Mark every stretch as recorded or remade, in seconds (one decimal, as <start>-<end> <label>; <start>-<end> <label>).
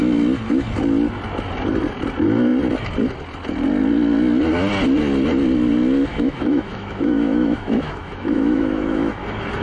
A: 0.0-6.1 recorded; 6.1-9.2 remade; 9.2-9.6 recorded